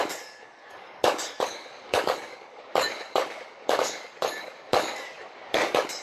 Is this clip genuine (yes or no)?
no